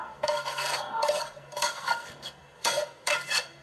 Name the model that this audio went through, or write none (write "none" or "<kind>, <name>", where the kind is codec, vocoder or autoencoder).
codec, SNAC